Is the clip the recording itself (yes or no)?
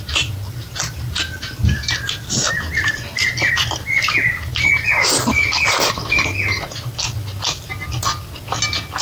yes